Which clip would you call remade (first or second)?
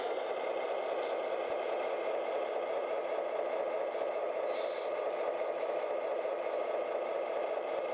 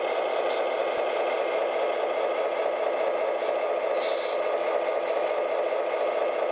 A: first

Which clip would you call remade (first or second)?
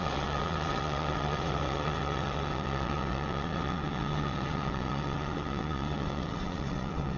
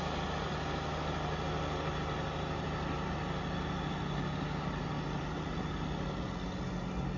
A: first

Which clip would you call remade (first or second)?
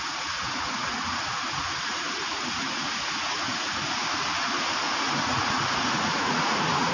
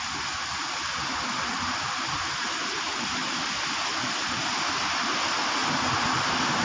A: first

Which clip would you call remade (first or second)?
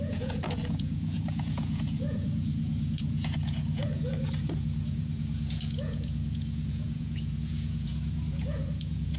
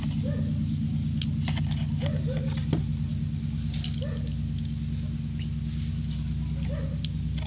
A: first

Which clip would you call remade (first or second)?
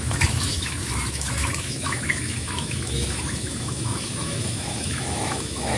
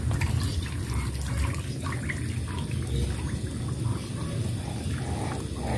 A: first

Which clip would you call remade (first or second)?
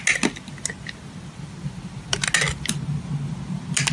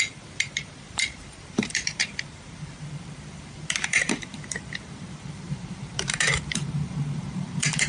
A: second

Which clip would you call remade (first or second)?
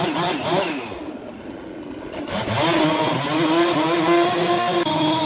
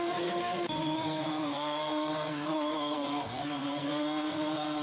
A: second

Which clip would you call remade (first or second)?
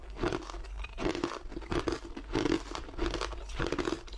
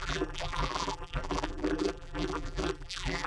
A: second